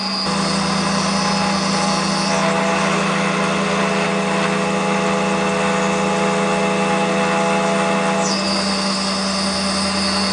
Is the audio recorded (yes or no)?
yes